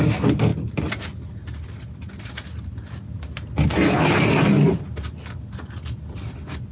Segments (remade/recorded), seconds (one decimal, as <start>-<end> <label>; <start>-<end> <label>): 0.0-6.7 recorded